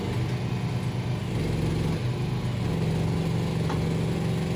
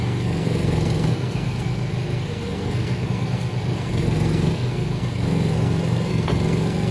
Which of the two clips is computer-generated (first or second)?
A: second